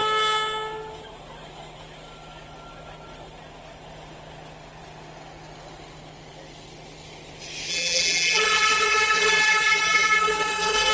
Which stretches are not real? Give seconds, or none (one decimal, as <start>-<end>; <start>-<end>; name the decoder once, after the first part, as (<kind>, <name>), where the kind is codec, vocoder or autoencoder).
7.7-10.9 (vocoder, BigVGAN v2)